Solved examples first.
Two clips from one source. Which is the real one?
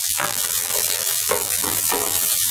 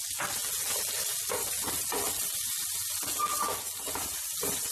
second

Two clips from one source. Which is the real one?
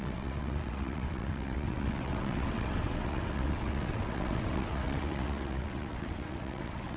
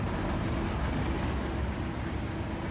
second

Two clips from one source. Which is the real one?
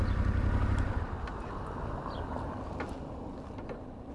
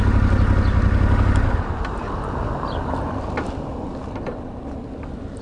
second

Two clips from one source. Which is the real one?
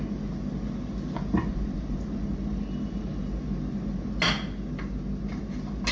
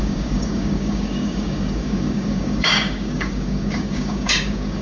first